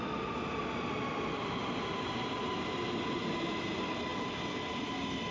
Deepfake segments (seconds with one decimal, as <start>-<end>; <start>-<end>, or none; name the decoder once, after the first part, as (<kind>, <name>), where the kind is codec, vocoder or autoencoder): none